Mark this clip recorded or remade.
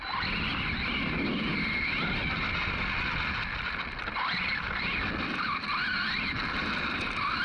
recorded